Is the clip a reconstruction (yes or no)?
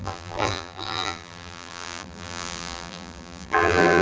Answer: yes